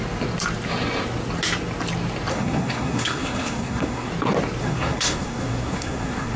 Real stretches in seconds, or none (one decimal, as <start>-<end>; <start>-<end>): 0.0-2.3; 4.1-4.6